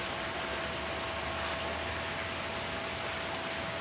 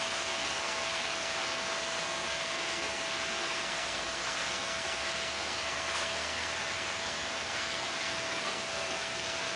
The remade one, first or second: second